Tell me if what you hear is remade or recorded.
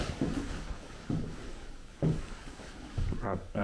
remade